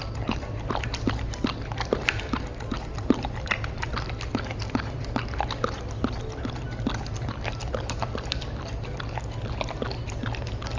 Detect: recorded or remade recorded